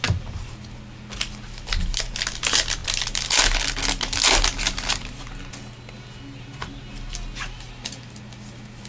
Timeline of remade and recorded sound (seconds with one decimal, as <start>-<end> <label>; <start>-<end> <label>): 0.0-8.9 recorded